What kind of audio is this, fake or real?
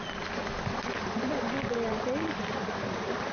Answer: real